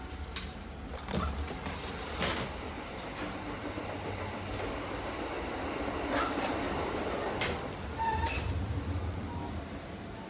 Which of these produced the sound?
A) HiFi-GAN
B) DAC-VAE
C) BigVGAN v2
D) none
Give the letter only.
C